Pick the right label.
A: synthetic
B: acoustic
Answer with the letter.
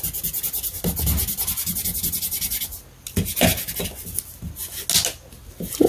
B